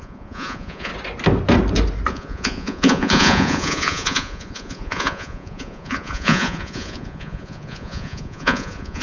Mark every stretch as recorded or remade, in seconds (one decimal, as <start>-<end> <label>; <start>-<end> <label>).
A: 0.0-0.9 remade; 0.9-2.1 recorded; 2.1-9.0 remade